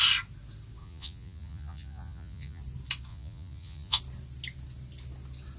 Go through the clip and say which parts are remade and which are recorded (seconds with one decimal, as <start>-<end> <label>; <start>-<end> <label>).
0.0-0.8 recorded; 0.8-2.6 remade; 2.6-3.1 recorded; 3.1-4.0 remade; 4.0-5.6 recorded